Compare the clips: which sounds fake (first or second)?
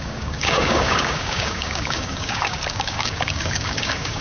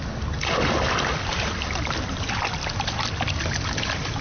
first